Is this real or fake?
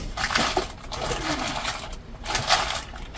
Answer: fake